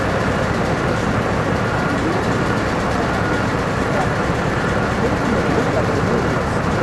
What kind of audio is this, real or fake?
fake